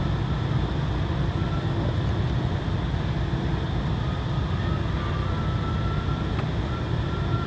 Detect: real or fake real